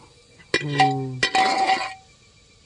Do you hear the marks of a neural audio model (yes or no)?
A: no